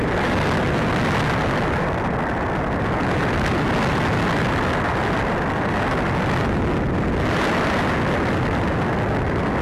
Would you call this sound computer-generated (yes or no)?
no